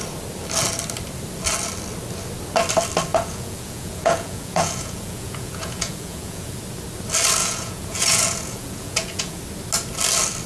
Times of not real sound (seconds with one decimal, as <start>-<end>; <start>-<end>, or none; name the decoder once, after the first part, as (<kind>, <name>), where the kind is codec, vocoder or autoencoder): 3.1-6.6 (vocoder, Vocos); 7.4-9.4